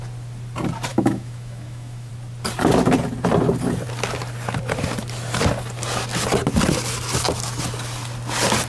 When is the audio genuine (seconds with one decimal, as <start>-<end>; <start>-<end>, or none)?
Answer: 0.0-0.9; 2.1-8.7